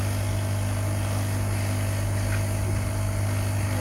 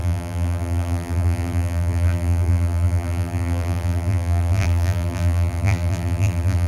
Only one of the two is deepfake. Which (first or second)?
second